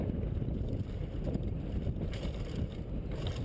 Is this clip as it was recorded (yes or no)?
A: yes